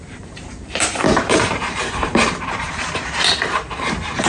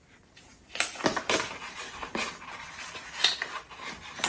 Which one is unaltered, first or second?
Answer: second